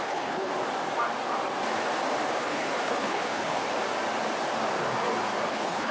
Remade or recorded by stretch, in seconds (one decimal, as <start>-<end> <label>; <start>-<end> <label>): 0.0-0.5 remade; 0.5-2.3 recorded; 2.3-3.6 remade; 3.6-5.5 recorded; 5.5-5.9 remade